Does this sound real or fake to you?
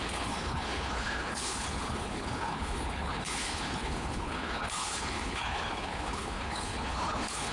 fake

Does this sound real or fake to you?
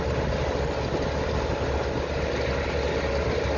real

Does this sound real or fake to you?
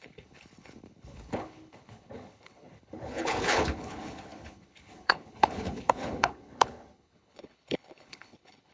fake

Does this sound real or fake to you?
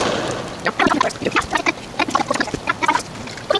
real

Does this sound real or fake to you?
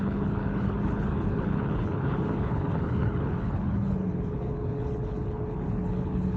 fake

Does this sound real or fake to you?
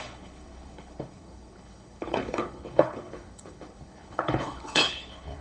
fake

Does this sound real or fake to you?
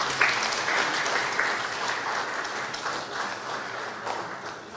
real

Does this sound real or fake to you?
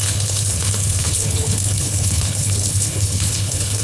fake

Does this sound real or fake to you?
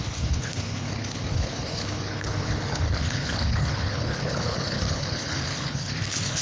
fake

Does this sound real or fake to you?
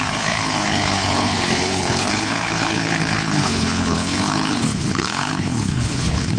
fake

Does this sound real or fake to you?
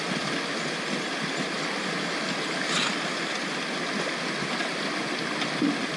real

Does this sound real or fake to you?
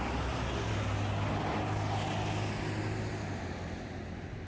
real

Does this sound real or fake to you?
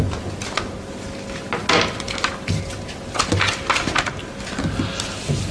real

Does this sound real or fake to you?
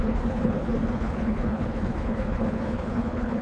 fake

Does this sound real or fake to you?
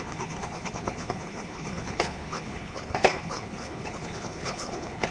fake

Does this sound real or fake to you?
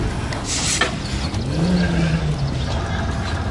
real